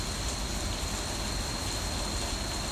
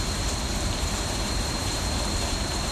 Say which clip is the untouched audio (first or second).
first